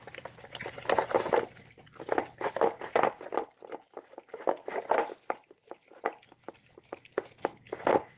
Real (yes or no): yes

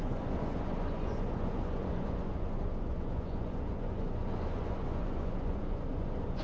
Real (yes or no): no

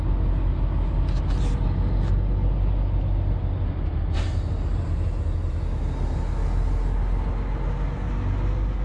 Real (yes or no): yes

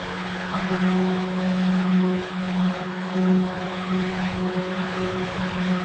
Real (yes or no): no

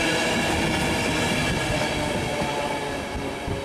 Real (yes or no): yes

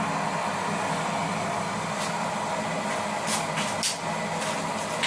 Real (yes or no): yes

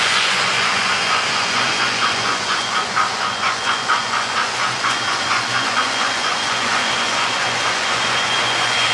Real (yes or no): no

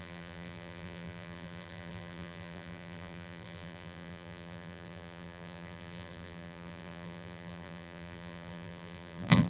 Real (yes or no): no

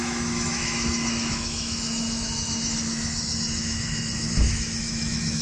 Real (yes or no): no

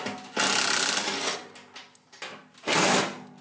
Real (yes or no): yes